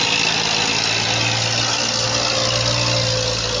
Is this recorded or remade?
recorded